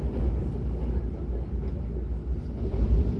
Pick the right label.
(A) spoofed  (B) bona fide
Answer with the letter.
B